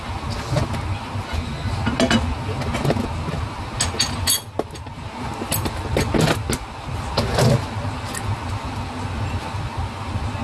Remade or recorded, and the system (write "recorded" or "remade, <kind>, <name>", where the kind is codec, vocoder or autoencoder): recorded